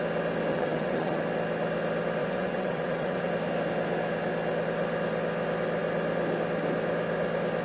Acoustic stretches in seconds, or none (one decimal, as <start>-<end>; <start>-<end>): 0.0-0.5; 1.2-2.2; 3.3-7.6